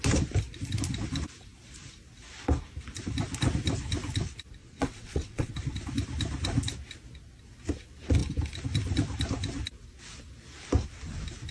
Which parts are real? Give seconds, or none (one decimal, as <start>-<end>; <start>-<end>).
0.0-4.6; 5.5-11.5